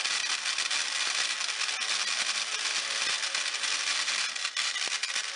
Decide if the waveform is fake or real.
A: real